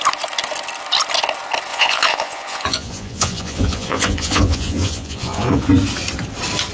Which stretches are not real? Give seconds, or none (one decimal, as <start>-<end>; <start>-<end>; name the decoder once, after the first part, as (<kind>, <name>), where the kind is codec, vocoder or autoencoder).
1.7-5.7 (vocoder, Vocos)